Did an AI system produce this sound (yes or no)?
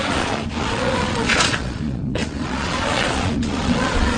yes